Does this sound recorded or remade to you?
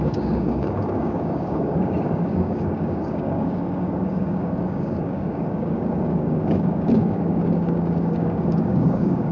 remade